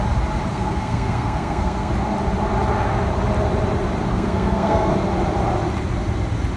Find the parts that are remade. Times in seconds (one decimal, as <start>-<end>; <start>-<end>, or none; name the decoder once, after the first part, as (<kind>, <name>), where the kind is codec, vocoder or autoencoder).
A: 0.5-1.9 (codec, SNAC); 4.1-4.9